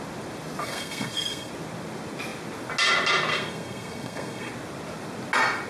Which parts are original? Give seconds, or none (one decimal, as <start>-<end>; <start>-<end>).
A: 0.0-0.6; 1.5-3.3; 4.5-5.7